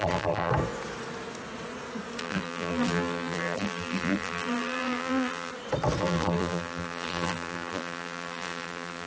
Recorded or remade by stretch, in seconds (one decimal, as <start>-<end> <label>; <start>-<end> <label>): 0.0-0.5 remade; 0.5-2.2 recorded; 2.2-5.5 remade; 5.5-6.0 recorded; 6.0-9.1 remade